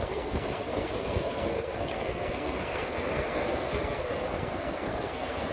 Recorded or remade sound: remade